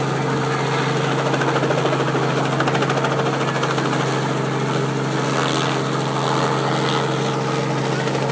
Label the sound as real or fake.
real